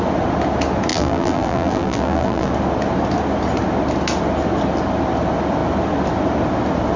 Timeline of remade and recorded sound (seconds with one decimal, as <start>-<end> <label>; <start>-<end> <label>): 0.0-0.9 recorded; 0.9-2.5 remade; 2.5-7.0 recorded